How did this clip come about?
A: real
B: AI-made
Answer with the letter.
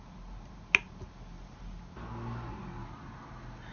A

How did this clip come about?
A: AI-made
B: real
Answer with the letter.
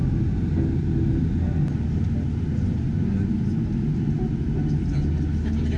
B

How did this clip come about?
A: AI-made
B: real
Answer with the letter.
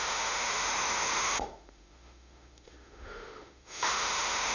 A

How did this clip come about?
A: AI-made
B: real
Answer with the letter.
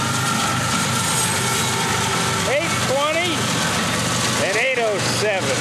B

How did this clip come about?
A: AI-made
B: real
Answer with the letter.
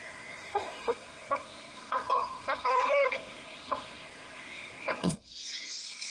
A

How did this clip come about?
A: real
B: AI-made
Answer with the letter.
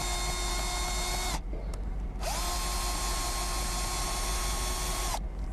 A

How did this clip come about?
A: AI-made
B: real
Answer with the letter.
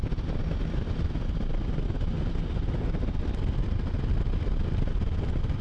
B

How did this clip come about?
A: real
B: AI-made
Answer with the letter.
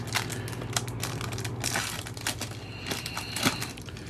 A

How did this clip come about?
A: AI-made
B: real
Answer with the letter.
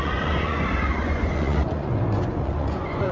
A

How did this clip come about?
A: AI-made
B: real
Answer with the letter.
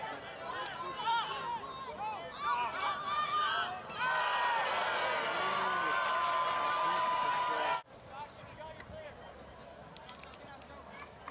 B